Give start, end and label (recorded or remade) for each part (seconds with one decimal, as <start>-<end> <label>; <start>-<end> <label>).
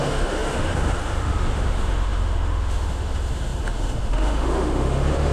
0.0-5.3 remade